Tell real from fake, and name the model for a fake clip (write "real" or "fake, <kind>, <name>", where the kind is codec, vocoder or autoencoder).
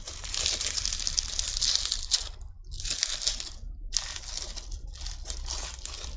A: real